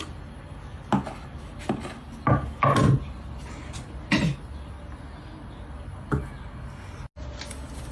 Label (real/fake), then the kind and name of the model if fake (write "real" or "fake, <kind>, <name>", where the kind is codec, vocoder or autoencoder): real